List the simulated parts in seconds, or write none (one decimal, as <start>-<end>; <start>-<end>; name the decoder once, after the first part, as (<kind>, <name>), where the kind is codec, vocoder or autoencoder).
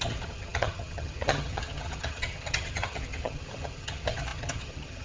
0.0-5.0 (vocoder, HiFi-GAN)